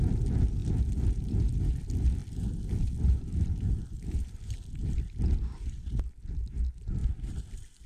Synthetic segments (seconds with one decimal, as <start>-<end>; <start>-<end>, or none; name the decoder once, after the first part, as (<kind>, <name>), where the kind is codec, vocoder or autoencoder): 2.2-3.6 (vocoder, BigVGAN v2); 7.0-7.5